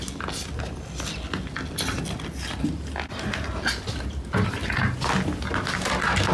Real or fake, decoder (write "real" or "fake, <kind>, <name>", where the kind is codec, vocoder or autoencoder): real